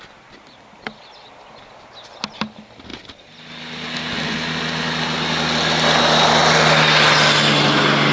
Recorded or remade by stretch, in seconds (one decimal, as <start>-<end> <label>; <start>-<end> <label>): 0.0-8.1 recorded